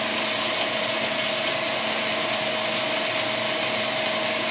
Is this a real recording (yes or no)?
yes